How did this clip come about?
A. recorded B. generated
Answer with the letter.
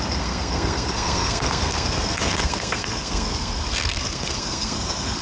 B